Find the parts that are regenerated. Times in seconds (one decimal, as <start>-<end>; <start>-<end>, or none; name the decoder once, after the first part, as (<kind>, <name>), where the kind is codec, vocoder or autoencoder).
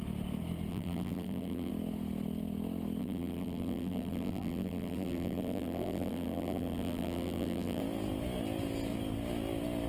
0.7-1.7 (vocoder, BigVGAN v2); 3.0-7.8